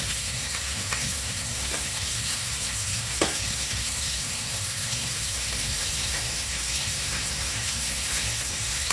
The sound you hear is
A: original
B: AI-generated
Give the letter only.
B